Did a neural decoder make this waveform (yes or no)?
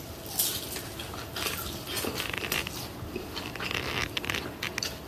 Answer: no